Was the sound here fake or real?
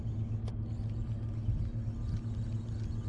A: real